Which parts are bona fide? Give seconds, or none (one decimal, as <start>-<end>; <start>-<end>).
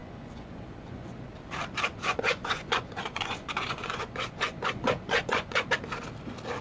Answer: 1.3-1.9; 5.7-6.6